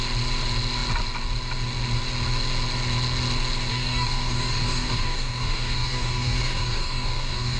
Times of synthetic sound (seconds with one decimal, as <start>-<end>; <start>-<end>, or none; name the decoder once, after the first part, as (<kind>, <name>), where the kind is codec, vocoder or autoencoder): 3.7-7.6 (codec, DAC)